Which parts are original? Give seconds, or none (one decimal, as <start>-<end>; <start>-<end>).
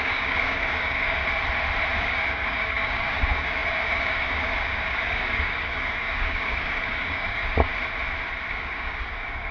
1.2-2.0; 7.7-8.5